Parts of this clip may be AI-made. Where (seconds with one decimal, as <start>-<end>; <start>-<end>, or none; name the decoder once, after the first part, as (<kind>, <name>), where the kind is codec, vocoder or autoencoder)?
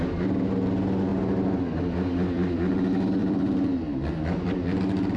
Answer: 3.2-4.1 (vocoder, BigVGAN v2)